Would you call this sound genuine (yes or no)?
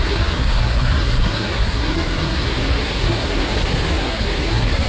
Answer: no